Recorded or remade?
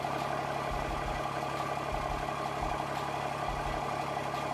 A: recorded